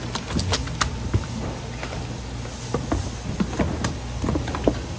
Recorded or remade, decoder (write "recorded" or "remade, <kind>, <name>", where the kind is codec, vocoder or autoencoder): recorded